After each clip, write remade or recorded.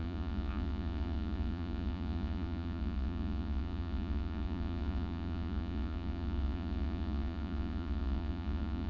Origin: remade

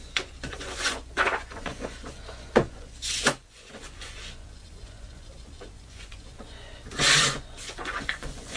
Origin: remade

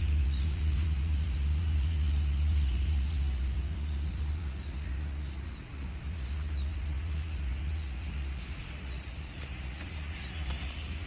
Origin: remade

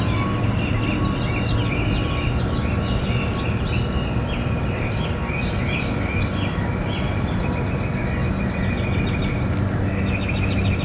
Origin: recorded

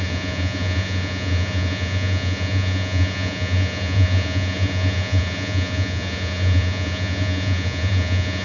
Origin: remade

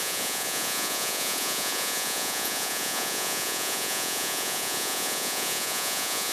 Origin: remade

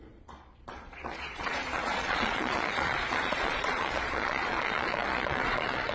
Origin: remade